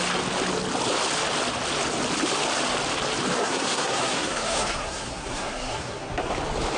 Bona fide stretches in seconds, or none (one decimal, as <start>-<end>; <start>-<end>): 0.0-3.4; 6.3-6.8